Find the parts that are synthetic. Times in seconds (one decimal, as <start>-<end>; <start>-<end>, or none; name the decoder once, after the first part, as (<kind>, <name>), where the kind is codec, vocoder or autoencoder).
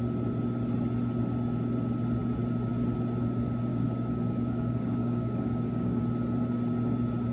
3.7-6.0 (codec, DAC)